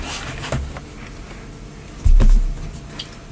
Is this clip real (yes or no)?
yes